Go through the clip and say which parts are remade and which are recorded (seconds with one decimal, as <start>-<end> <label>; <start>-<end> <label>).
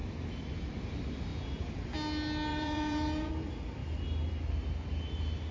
0.0-1.3 recorded; 1.3-1.8 remade; 1.8-2.5 recorded; 2.5-3.3 remade; 3.3-5.5 recorded